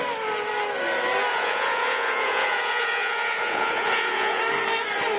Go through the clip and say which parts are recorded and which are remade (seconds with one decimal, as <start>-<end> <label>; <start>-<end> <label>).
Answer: 0.0-1.3 recorded; 1.3-4.4 remade; 4.4-5.2 recorded